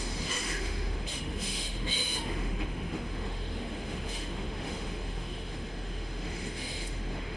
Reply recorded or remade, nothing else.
remade